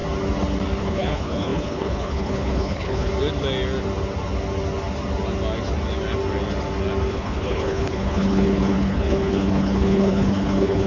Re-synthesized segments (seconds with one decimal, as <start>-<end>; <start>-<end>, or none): 0.8-3.1; 7.1-10.9